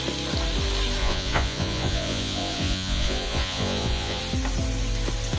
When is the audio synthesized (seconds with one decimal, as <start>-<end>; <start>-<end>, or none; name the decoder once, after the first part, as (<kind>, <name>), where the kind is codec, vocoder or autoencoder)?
1.0-4.2 (vocoder, Vocos)